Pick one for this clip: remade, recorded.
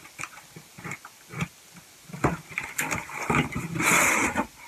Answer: recorded